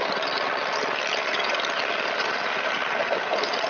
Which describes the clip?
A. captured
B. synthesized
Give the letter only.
A